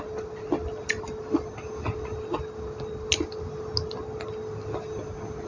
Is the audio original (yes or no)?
yes